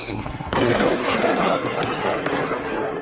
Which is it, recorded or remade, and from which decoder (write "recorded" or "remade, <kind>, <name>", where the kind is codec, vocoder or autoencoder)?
remade, codec, SNAC